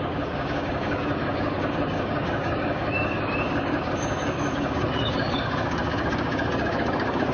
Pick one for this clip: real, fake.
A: fake